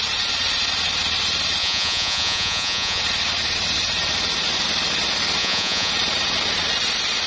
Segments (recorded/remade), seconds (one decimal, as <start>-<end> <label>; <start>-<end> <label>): 0.0-1.6 recorded; 1.6-3.0 remade; 3.0-5.4 recorded; 5.4-5.9 remade; 5.9-7.3 recorded